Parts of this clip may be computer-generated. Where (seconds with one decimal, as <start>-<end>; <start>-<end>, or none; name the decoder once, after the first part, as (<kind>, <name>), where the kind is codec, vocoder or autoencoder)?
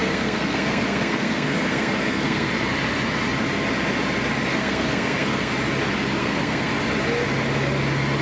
0.0-2.5 (codec, SNAC); 4.5-5.5; 6.2-6.7